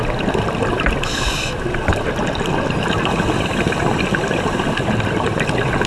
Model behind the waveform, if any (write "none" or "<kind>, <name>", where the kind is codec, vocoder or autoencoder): none